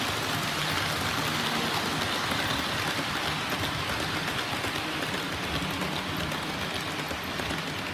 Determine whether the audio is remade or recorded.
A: recorded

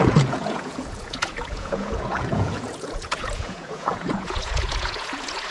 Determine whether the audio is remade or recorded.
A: remade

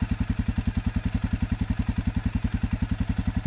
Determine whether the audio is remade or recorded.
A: recorded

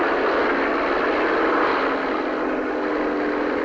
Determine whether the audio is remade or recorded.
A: recorded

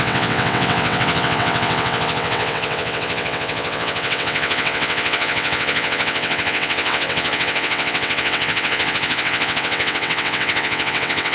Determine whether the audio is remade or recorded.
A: remade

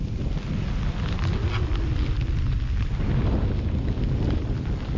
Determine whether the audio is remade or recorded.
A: recorded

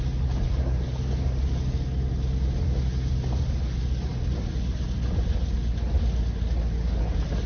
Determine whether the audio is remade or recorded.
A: recorded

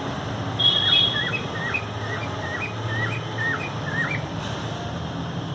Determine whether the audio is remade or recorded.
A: recorded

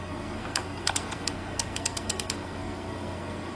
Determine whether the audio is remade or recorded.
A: remade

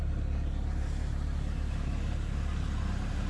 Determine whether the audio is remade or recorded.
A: recorded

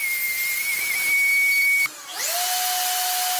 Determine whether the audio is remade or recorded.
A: recorded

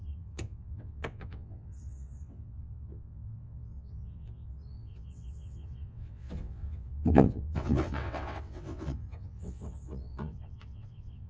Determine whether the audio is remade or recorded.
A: remade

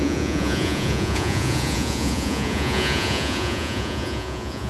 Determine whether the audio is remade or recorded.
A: remade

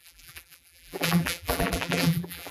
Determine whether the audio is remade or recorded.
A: remade